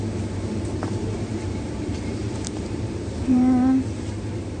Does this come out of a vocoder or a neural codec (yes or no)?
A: yes